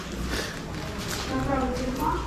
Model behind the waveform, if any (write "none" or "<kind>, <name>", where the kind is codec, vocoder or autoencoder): none